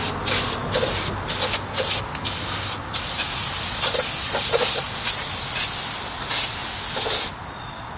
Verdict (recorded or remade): recorded